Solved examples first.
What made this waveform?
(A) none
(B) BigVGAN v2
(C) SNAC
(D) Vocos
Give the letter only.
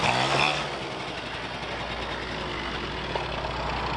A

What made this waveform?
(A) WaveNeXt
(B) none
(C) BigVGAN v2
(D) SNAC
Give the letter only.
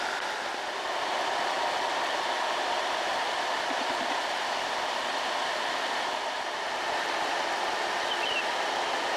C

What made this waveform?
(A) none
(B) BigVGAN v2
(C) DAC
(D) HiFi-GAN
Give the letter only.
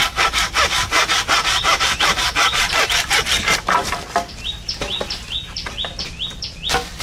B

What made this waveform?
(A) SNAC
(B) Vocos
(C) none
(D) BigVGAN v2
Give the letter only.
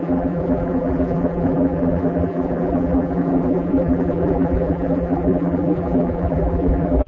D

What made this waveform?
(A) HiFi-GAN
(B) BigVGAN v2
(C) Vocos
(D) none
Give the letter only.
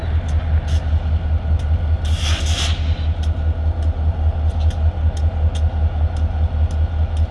D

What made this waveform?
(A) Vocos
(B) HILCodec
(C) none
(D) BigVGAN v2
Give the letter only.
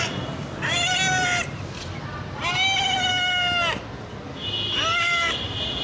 C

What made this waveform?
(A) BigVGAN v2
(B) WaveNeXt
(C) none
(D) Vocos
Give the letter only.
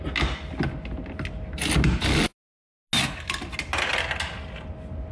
C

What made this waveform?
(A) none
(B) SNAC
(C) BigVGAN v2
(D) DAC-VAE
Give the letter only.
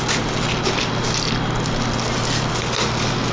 A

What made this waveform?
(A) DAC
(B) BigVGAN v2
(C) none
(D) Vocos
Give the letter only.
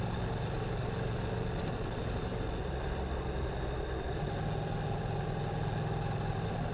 C